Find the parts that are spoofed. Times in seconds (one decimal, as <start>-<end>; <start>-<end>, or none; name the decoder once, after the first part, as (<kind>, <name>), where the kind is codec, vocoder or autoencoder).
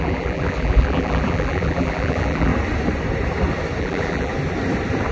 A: 0.0-2.5 (vocoder, BigVGAN v2); 3.8-4.3